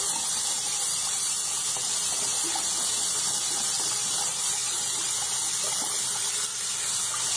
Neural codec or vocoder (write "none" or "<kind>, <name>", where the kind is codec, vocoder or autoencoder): none